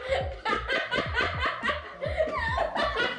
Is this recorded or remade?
recorded